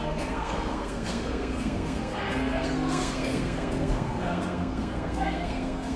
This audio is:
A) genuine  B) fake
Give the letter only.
B